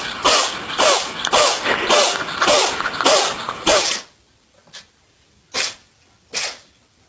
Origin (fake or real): real